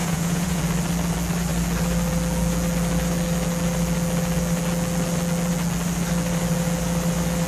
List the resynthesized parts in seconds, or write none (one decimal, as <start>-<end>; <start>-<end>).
0.0-0.6